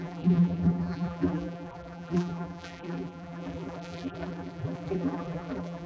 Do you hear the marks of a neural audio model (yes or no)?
yes